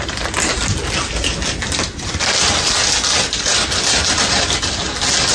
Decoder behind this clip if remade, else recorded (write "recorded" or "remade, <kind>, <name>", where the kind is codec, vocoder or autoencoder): recorded